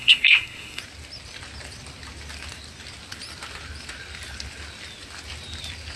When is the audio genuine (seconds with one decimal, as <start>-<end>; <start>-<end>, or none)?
0.8-6.0